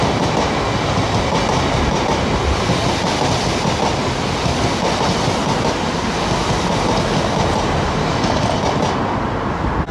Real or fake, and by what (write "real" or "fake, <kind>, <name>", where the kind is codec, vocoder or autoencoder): real